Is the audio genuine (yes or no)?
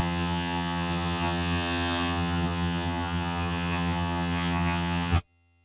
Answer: no